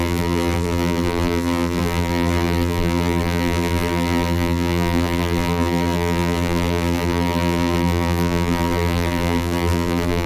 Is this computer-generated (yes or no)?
yes